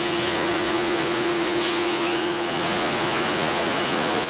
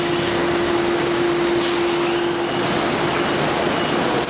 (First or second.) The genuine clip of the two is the second